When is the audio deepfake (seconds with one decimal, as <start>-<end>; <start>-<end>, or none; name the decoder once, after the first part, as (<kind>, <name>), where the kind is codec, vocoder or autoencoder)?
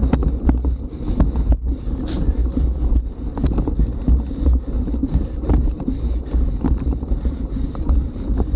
1.5-8.6 (vocoder, BigVGAN v2)